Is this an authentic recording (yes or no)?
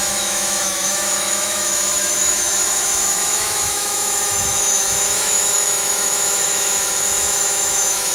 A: no